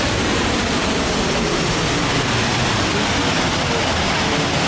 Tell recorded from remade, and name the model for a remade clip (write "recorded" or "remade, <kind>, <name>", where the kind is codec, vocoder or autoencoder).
recorded